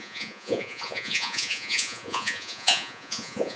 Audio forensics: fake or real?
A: fake